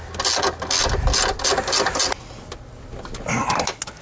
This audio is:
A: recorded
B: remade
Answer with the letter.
A